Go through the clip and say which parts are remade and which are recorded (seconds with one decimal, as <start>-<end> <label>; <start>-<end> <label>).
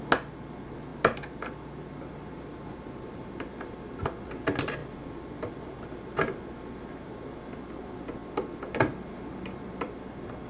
0.0-10.5 recorded